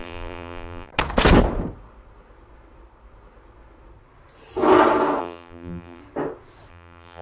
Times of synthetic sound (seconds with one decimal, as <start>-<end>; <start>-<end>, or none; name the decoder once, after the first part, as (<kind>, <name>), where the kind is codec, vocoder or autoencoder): 0.0-0.9 (vocoder, BigVGAN v2); 5.2-6.0; 6.7-7.2